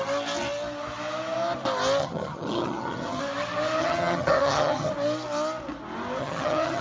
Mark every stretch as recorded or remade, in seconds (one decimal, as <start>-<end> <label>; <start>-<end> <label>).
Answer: 0.0-2.0 recorded; 2.0-3.2 remade; 3.2-3.8 recorded; 3.8-4.9 remade; 4.9-6.2 recorded; 6.2-6.8 remade